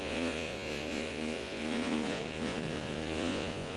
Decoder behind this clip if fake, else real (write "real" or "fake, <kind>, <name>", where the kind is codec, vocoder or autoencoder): fake, vocoder, Vocos